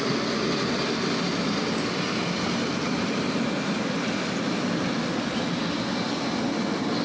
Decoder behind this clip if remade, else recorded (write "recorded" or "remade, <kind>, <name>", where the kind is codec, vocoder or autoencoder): recorded